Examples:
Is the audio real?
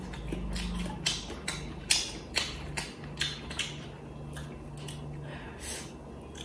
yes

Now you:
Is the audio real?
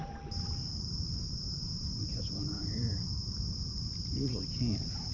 no